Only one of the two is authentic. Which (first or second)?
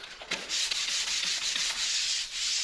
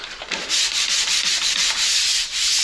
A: second